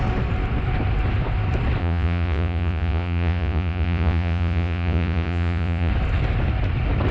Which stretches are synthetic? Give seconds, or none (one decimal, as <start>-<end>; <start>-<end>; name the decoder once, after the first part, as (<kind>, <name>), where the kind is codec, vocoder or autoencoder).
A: 1.8-5.9 (vocoder, Vocos)